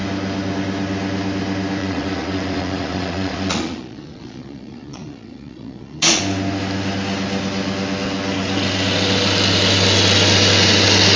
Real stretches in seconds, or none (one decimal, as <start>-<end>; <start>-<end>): 0.0-1.8; 6.2-11.2